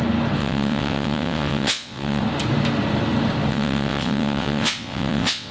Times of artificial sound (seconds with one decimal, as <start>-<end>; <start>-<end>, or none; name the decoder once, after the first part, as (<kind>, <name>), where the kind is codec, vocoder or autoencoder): 0.4-2.2 (vocoder, WaveNeXt); 3.5-5.5